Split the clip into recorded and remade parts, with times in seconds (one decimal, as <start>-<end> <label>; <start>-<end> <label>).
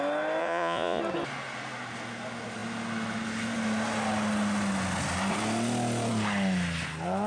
0.0-0.4 recorded; 0.4-1.0 remade; 1.0-7.3 recorded